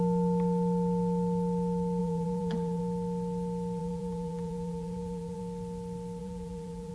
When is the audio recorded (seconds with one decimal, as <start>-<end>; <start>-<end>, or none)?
0.0-2.0; 2.8-3.8; 5.4-6.2

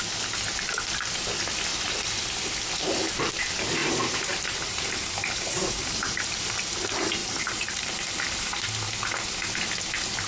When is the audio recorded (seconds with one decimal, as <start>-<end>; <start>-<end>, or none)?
0.0-3.8; 6.4-7.2; 8.1-10.3